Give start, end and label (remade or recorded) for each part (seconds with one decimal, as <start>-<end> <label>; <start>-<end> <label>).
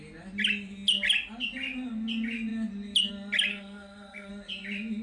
0.0-3.5 recorded; 3.5-4.3 remade; 4.3-5.0 recorded